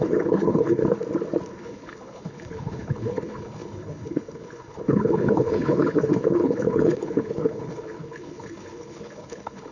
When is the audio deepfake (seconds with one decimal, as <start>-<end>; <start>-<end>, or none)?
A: 0.0-0.8; 1.5-9.7